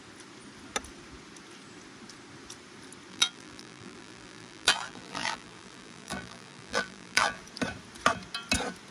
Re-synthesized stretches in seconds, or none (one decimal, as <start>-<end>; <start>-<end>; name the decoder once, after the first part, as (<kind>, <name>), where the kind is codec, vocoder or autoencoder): 3.1-7.4 (vocoder, BigVGAN v2)

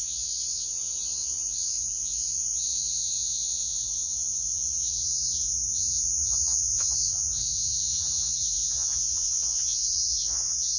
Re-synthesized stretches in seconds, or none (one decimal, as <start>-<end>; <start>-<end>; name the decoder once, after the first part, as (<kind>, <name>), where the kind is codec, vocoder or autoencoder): 0.0-10.8 (vocoder, Vocos)

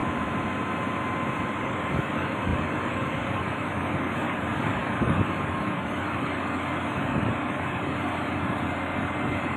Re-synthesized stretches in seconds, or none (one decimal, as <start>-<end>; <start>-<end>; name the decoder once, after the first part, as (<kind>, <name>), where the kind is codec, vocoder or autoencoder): 1.6-9.6 (codec, DAC)

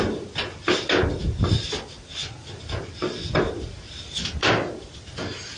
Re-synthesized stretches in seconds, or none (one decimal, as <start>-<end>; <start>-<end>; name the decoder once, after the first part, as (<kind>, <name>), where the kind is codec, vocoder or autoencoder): 3.0-3.9 (vocoder, BigVGAN v2)

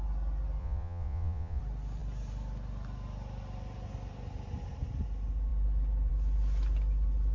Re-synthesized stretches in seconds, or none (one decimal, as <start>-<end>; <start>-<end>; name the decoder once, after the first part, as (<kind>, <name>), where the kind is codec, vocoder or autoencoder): 0.6-1.6 (vocoder, Vocos)